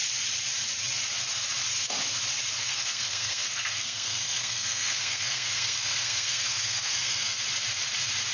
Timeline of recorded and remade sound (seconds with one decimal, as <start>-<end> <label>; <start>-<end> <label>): 0.0-2.6 recorded; 2.6-7.4 remade; 7.4-8.3 recorded